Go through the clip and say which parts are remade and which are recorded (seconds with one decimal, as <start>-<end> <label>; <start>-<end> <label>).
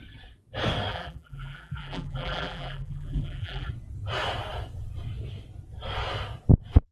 0.0-0.9 recorded; 0.9-3.7 remade; 3.7-6.9 recorded